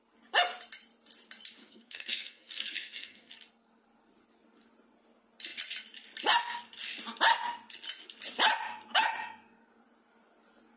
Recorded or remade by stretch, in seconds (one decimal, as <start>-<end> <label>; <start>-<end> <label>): 0.0-1.6 recorded; 1.6-3.3 remade; 3.3-10.8 recorded